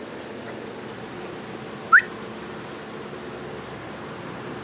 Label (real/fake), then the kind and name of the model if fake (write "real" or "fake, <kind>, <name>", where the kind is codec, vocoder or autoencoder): real